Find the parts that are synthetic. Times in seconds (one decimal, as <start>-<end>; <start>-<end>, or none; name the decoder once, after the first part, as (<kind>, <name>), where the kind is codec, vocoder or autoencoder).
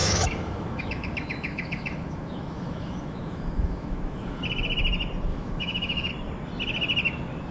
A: 0.0-4.4 (autoencoder, DAC-VAE); 5.3-6.1